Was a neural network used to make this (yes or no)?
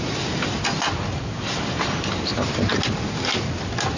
no